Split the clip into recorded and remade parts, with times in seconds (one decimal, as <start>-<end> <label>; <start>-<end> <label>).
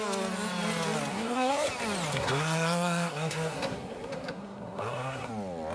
0.0-1.1 recorded; 1.1-1.7 remade; 1.7-2.1 recorded; 2.1-5.3 remade; 5.3-5.7 recorded